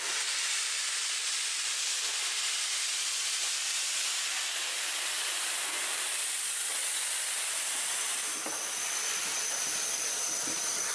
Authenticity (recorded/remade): remade